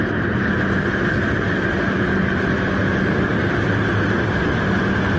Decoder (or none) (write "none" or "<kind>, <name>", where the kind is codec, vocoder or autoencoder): none